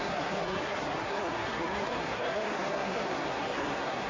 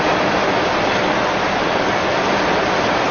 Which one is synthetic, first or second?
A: first